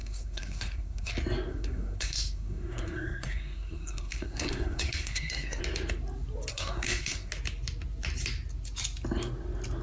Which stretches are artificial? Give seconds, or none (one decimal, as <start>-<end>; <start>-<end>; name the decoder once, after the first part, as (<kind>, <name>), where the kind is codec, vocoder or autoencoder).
0.0-1.1 (codec, SNAC); 1.5-5.6; 6.5-7.3